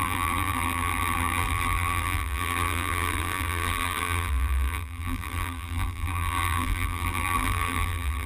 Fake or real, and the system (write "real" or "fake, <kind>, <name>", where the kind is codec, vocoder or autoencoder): fake, vocoder, BigVGAN v2